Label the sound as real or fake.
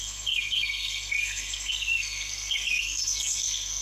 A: fake